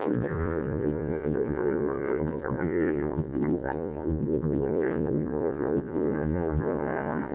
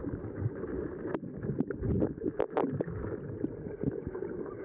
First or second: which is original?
second